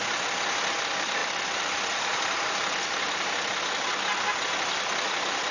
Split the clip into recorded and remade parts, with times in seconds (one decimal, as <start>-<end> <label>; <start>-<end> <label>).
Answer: 0.0-5.5 recorded